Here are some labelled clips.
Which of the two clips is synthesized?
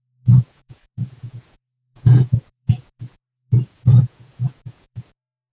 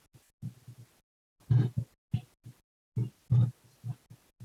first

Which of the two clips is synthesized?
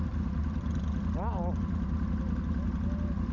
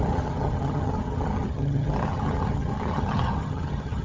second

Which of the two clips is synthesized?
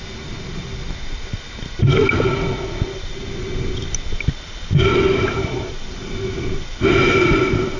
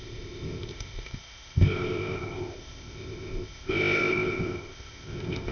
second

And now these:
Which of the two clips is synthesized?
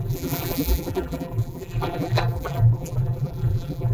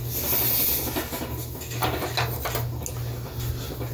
first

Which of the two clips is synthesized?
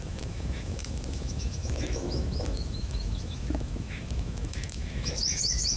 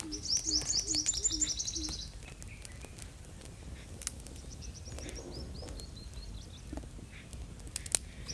first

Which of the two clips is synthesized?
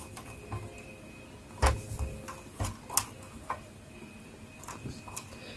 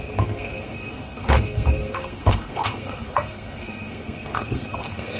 second